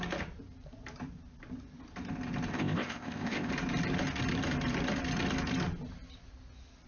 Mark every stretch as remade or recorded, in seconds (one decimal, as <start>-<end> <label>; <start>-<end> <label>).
0.0-2.5 recorded; 2.5-3.5 remade; 3.5-6.9 recorded